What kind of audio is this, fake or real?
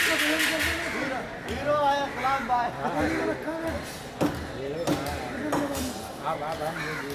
real